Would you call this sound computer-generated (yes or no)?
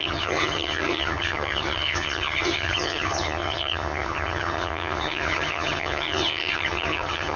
yes